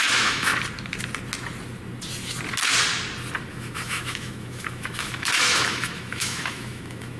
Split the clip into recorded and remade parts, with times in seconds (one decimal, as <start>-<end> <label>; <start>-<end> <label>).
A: 0.0-0.5 remade; 0.5-3.5 recorded; 3.5-7.2 remade